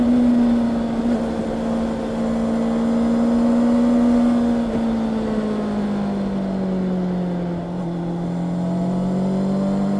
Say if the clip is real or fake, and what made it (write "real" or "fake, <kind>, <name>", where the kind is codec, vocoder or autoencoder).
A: real